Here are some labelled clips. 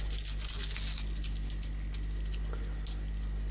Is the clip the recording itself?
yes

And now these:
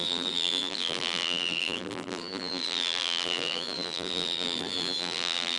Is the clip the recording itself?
no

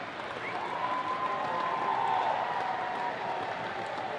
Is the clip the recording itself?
yes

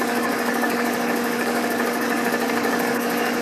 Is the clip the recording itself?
no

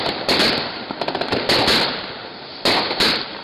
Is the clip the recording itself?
yes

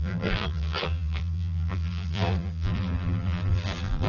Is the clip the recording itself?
no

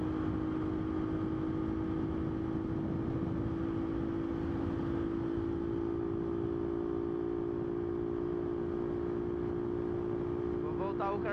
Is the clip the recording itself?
yes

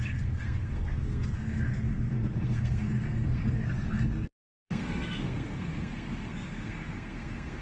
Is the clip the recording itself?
no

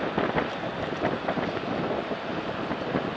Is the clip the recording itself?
yes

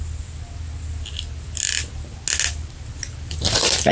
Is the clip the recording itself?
yes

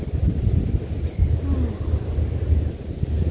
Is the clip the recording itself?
yes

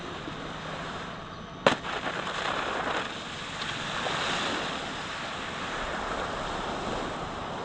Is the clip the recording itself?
yes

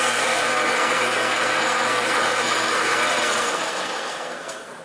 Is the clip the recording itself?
no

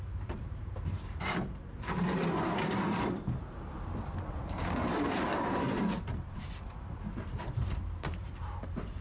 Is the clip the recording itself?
no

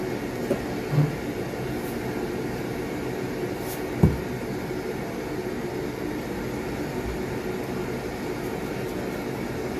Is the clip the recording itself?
yes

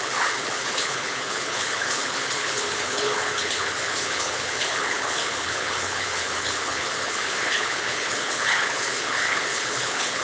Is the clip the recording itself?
no